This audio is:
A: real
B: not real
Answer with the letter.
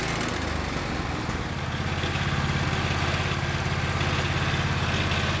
A